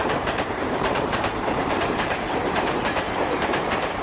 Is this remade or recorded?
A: remade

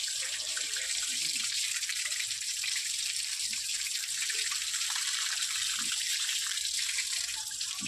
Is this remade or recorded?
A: remade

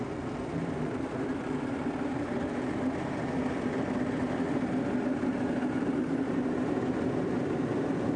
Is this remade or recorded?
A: remade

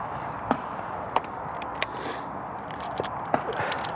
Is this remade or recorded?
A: remade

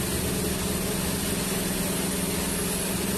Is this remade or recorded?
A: recorded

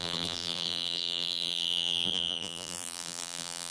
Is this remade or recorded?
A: remade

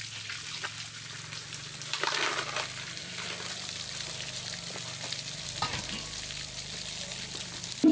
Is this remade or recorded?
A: remade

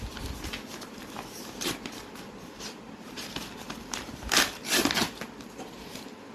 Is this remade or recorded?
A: remade